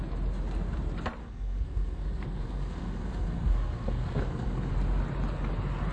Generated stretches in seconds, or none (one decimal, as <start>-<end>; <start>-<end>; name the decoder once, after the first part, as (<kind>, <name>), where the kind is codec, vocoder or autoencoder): 1.2-4.7 (codec, SNAC)